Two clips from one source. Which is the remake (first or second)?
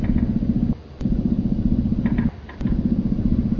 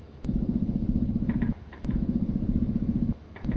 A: second